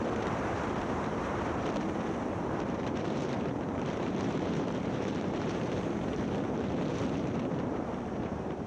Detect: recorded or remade remade